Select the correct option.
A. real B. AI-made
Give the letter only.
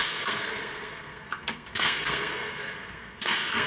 B